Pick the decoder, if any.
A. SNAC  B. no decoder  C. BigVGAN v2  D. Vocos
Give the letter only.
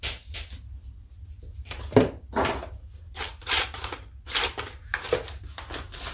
B